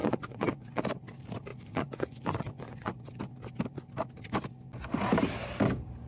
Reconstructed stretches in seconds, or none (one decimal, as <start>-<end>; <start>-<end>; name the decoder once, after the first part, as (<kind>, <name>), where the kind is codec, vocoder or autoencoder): 0.0-0.8 (vocoder, Vocos); 1.5-2.9